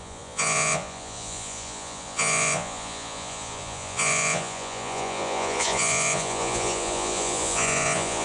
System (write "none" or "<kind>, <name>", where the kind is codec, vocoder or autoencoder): vocoder, Vocos